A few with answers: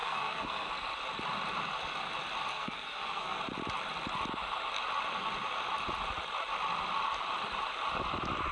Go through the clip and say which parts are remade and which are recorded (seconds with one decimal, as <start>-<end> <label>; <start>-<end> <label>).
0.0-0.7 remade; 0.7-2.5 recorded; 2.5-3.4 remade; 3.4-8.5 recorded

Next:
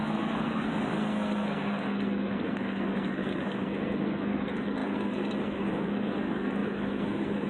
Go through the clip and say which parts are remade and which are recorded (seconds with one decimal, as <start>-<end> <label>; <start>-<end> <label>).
0.0-7.5 remade

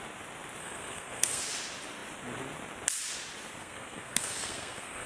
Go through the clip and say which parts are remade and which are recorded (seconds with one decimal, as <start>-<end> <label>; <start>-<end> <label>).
0.0-0.6 recorded; 0.6-1.4 remade; 1.4-3.6 recorded; 3.6-5.1 remade

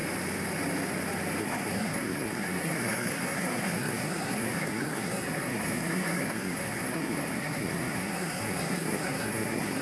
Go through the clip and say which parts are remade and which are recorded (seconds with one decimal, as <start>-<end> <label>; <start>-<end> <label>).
0.0-1.4 recorded; 1.4-9.8 remade

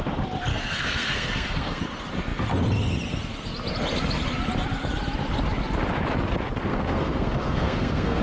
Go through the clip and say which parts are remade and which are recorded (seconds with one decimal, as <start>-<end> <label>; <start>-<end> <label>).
0.0-0.5 recorded; 0.5-1.8 remade; 1.8-6.7 recorded; 6.7-8.2 remade